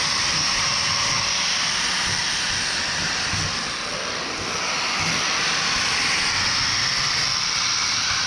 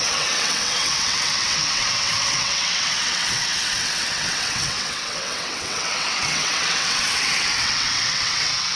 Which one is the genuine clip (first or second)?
first